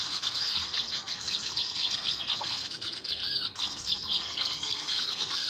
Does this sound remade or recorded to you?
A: remade